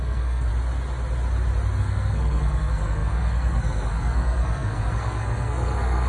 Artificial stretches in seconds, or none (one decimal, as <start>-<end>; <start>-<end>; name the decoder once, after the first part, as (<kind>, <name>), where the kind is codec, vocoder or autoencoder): 0.0-0.5 (codec, SNAC); 1.8-6.1